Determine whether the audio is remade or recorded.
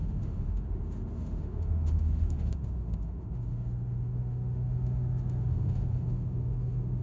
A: remade